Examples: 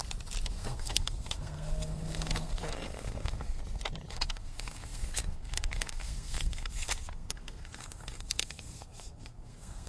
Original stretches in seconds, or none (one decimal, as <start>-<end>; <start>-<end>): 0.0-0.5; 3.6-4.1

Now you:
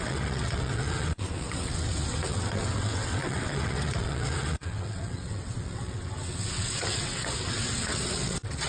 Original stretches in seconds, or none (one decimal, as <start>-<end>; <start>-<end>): none

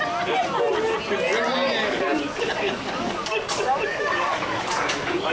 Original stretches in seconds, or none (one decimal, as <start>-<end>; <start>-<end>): 0.0-1.8

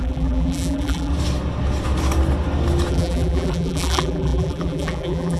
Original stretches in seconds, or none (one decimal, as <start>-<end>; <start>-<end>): 1.1-2.9